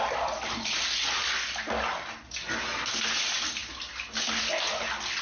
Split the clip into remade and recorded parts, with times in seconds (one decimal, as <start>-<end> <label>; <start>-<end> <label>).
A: 0.0-5.2 recorded